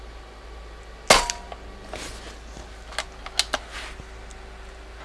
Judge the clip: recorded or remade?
recorded